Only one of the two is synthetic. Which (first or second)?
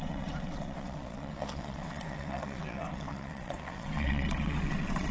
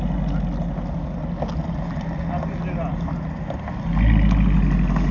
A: first